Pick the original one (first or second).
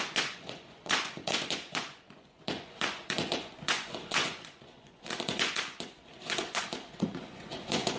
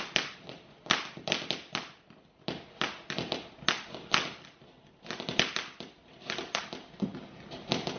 second